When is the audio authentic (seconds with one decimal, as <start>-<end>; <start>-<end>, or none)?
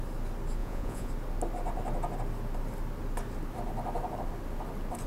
0.0-0.6; 1.1-5.1